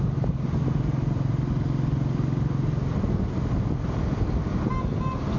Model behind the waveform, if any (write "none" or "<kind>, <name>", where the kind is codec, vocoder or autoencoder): none